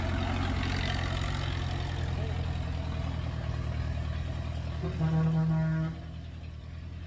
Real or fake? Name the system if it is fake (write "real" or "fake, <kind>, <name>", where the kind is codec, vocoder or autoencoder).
real